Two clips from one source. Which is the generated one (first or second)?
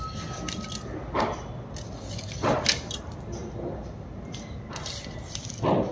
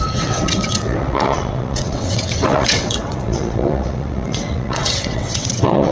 second